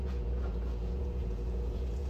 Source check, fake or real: fake